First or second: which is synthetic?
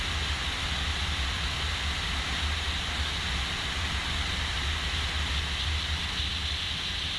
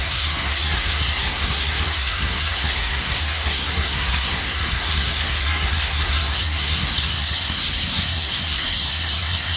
second